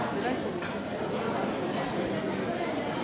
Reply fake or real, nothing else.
real